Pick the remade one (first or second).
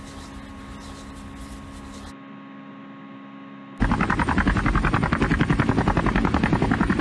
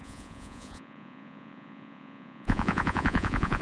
second